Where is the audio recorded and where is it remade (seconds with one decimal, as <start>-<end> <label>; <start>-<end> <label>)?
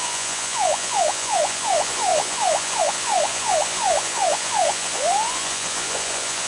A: 0.0-6.5 remade